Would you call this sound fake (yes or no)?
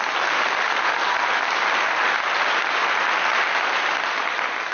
no